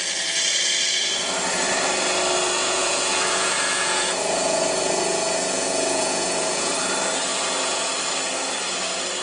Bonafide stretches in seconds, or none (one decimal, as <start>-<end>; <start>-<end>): 0.0-2.6; 6.7-7.3; 7.9-9.2